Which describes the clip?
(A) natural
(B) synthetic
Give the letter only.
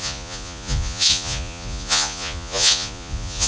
B